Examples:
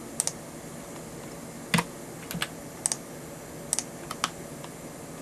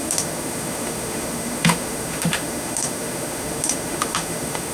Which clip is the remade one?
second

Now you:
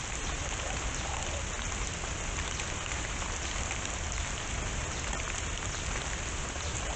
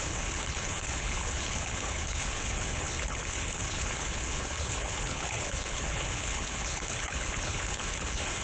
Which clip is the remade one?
second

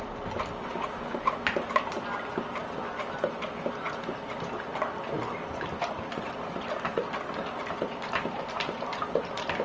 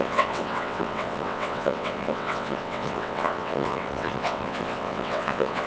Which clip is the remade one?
second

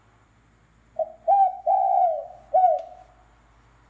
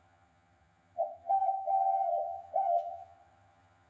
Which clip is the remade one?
second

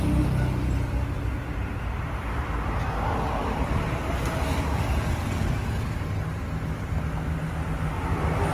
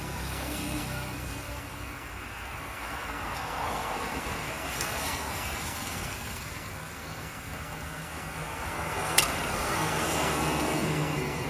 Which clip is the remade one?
second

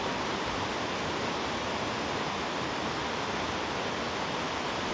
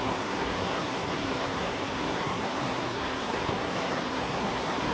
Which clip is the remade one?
second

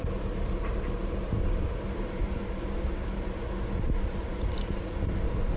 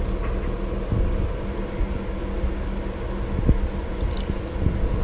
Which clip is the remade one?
first